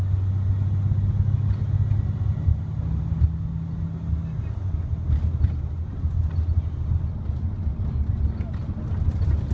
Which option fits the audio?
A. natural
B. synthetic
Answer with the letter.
A